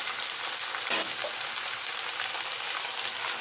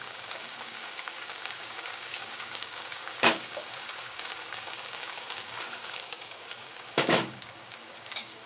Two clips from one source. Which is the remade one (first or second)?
second